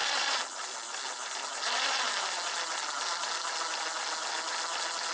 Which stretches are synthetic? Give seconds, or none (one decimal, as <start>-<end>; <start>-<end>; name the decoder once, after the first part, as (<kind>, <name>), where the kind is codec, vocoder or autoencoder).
none